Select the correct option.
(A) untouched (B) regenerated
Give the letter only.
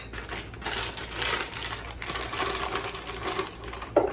A